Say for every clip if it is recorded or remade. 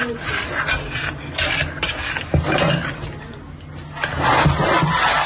recorded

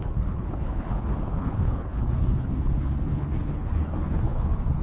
remade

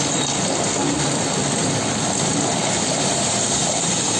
recorded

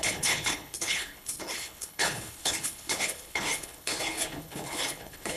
remade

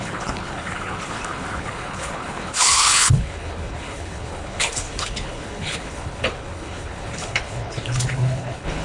remade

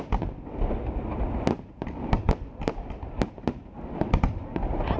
recorded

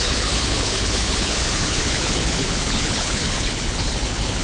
remade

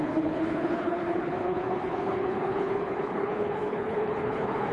remade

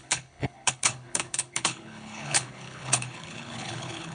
remade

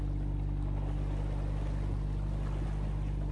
recorded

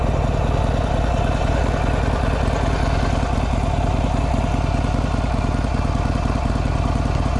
recorded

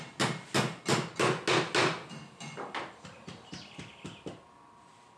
recorded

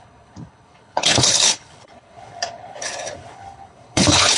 remade